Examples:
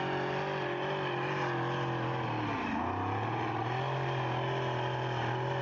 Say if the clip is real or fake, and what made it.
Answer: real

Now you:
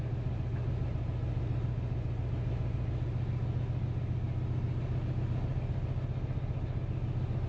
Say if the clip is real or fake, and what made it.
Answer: real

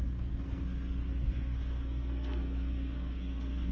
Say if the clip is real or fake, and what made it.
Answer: fake, codec, SNAC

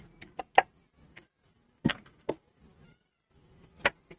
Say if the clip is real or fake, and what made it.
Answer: real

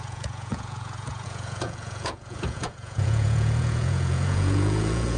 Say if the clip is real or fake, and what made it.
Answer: fake, vocoder, Vocos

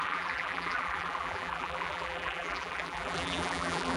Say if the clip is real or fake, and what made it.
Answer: fake, vocoder, BigVGAN v2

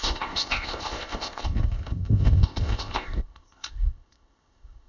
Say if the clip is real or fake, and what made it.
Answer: fake, codec, ZipCodec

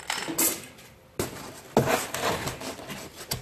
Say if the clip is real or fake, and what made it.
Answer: real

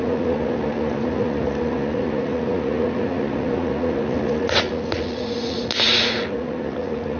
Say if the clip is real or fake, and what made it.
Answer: fake, vocoder, Vocos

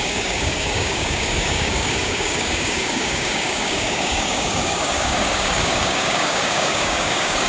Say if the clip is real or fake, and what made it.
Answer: fake, codec, DAC